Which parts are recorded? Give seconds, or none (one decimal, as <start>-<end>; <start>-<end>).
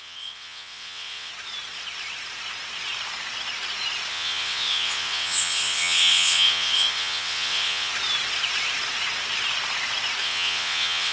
1.3-4.1; 7.9-10.2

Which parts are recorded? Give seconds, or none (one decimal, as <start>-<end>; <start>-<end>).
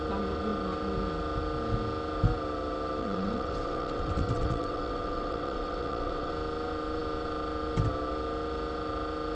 0.0-3.0; 6.3-9.3